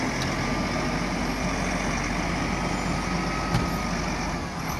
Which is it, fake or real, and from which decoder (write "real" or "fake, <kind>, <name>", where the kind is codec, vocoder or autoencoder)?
real